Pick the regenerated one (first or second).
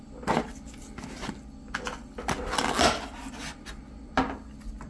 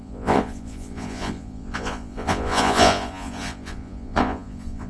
second